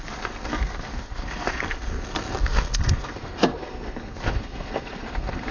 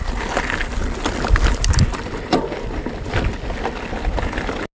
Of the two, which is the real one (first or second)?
second